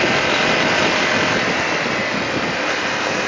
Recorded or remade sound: recorded